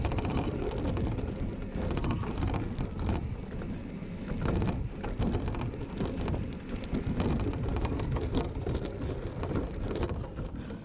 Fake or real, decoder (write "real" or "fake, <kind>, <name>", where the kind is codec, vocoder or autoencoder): real